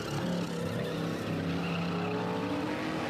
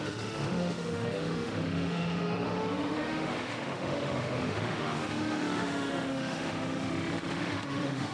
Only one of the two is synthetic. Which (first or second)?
second